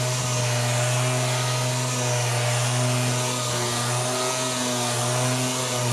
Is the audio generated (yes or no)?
no